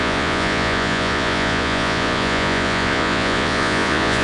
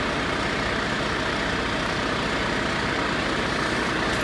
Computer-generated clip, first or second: first